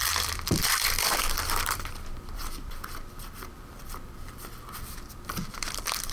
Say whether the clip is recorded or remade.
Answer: remade